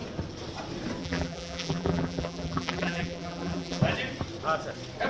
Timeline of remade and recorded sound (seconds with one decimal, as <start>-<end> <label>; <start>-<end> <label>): 0.0-1.0 recorded; 1.0-3.8 remade; 3.8-5.1 recorded